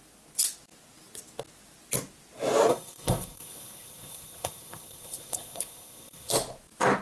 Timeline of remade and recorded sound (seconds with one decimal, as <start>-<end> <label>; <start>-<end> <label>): 0.0-2.7 recorded; 2.7-6.3 remade; 6.3-7.0 recorded